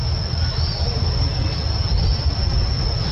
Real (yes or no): yes